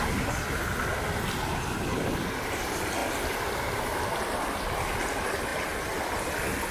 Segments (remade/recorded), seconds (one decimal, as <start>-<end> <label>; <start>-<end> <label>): 0.0-6.7 recorded